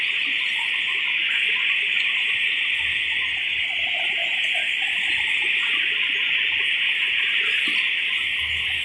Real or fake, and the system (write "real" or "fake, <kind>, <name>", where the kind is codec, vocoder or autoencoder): real